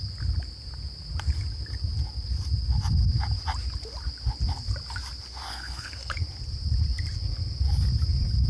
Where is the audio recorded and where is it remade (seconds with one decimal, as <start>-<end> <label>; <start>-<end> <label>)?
0.0-5.5 recorded; 5.5-6.1 remade; 6.1-8.5 recorded